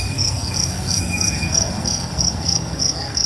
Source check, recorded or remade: remade